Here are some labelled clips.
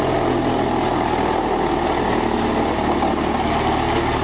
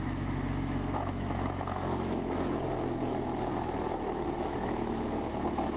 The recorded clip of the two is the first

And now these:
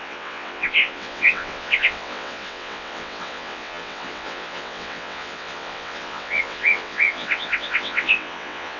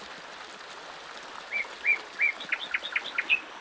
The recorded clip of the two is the second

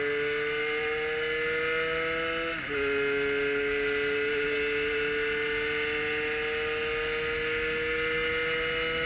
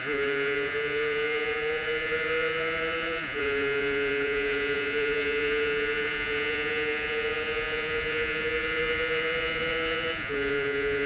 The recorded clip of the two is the first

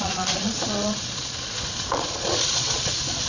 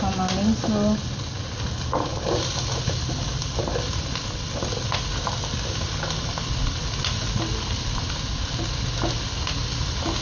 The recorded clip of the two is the second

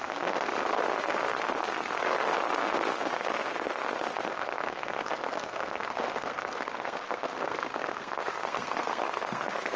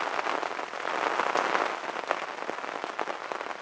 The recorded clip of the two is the second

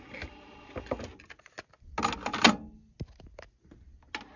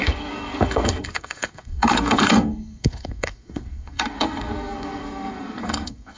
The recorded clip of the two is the first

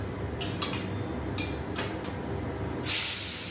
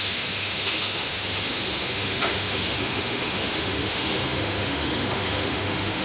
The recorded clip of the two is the first